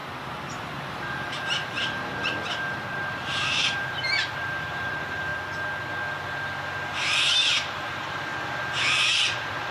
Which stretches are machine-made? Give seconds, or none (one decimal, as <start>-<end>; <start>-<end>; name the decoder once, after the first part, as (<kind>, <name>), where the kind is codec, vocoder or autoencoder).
0.0-5.3 (vocoder, BigVGAN v2); 6.9-8.3; 8.9-9.7